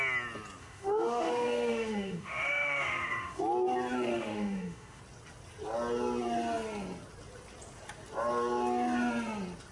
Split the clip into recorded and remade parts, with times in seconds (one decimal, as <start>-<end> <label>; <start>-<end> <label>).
0.0-0.6 recorded; 0.6-3.4 remade; 3.4-4.1 recorded; 4.1-5.0 remade; 5.0-9.7 recorded